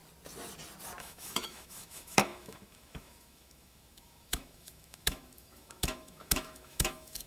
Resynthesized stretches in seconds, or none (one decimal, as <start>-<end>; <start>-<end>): 1.0-7.3